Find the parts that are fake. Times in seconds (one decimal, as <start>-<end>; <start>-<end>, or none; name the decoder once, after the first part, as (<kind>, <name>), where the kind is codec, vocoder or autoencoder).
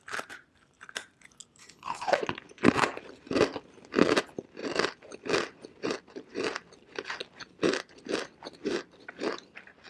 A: 1.6-2.2 (codec, HILCodec)